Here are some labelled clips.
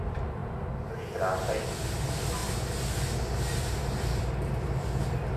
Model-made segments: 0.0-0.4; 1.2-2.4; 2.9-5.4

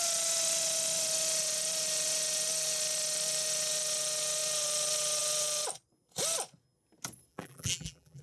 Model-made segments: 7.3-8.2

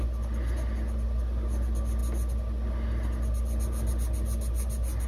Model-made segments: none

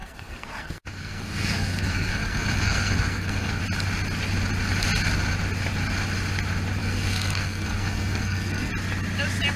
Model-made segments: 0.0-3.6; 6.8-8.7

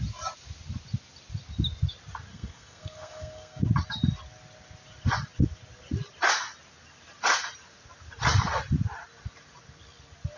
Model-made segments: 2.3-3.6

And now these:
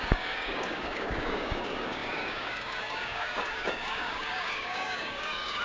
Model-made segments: 0.0-5.6

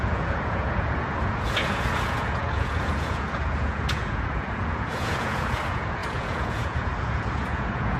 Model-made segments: 0.0-8.0